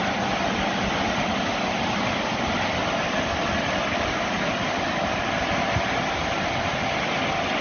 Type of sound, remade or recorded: recorded